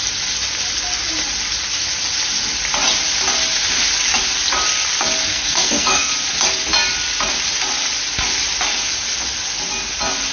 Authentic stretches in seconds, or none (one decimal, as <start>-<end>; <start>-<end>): 0.0-5.3; 6.1-10.3